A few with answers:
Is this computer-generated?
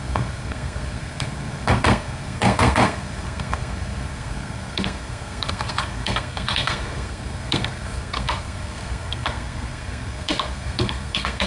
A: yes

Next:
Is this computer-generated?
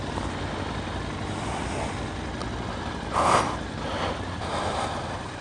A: no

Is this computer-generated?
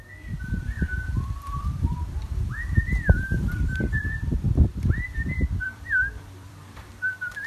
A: yes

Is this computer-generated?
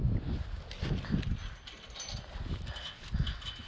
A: no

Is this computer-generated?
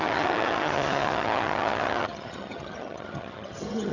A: yes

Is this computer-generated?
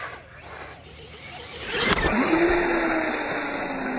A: no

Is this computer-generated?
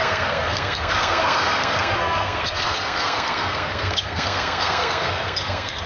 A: yes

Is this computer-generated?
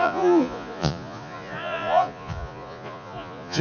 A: yes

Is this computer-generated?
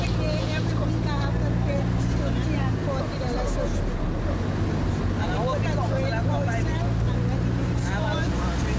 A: no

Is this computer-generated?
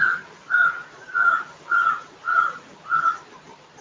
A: no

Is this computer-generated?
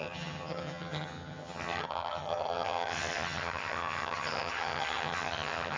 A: yes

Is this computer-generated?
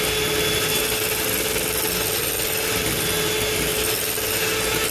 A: no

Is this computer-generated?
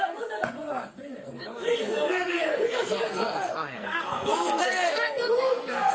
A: yes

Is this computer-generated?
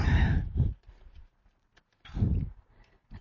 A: yes